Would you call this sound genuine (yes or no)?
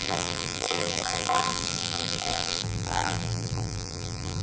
no